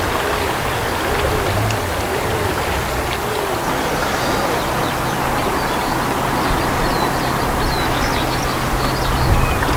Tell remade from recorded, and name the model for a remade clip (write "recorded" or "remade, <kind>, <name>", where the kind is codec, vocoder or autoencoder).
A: recorded